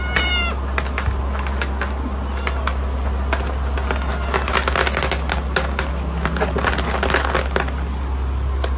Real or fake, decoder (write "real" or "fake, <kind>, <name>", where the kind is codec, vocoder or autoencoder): real